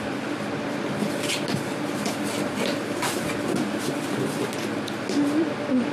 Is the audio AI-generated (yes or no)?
no